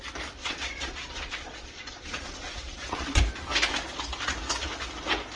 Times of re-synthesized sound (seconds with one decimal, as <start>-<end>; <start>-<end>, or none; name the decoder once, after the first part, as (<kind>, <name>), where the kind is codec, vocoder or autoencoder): 0.4-3.2 (vocoder, Vocos)